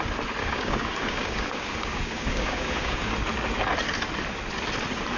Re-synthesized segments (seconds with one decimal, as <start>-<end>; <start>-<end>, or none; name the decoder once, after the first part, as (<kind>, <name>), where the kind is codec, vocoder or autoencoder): 0.4-3.1 (codec, DAC)